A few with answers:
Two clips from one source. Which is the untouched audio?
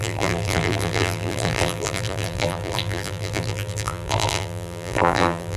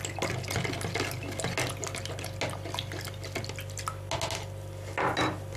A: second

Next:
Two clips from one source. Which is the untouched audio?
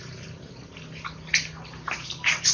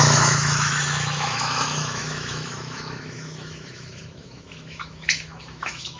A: first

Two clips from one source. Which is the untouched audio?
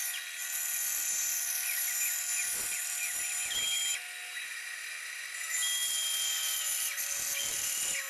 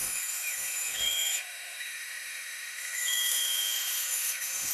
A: first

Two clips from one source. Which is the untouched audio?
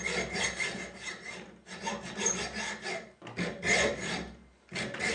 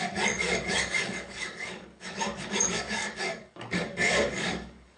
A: first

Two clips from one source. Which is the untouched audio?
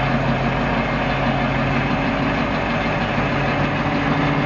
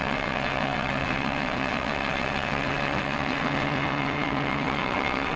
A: first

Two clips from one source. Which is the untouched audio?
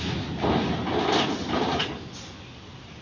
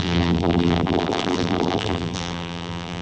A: first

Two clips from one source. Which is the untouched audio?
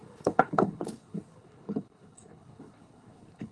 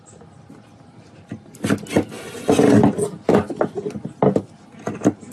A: second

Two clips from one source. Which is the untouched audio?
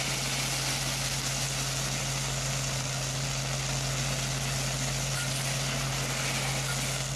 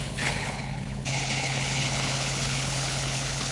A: first